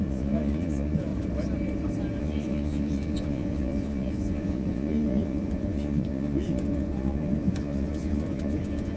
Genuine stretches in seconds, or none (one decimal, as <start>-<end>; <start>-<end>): 1.1-2.2